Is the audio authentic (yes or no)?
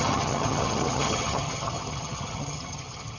no